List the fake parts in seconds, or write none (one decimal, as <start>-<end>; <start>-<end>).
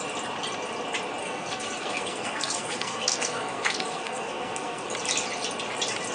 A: 1.2-4.9